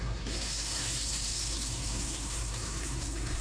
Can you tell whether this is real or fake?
fake